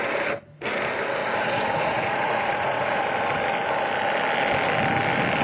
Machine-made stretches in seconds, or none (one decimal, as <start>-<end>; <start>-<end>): 1.2-3.0